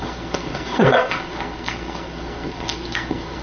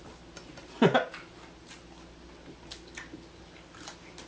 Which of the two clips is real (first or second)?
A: second